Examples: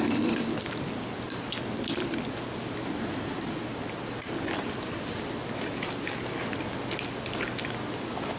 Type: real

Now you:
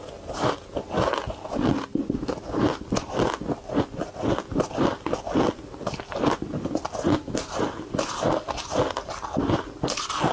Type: real